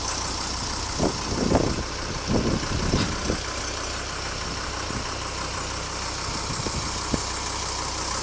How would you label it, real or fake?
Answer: real